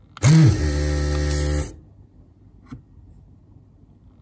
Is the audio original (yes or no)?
yes